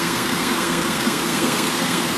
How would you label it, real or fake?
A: fake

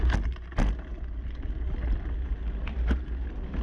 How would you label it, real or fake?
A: real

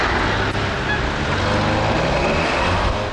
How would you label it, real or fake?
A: real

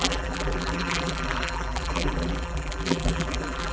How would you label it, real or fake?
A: fake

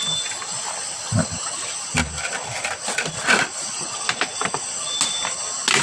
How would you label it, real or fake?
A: real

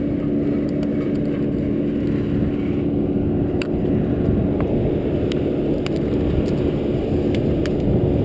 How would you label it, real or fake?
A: real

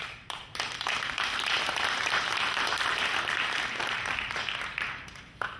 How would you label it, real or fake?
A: fake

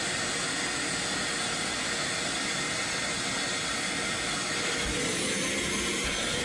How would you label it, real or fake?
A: real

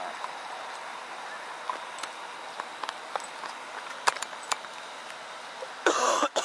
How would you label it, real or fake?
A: real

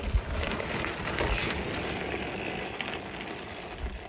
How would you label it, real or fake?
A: real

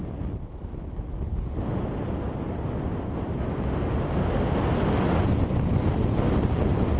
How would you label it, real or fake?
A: real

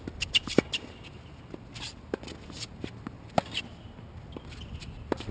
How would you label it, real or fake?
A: real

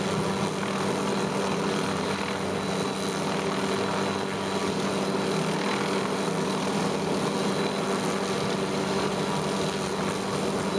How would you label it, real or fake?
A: real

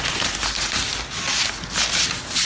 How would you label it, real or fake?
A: real